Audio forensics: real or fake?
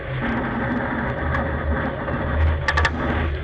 real